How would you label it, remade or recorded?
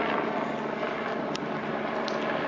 recorded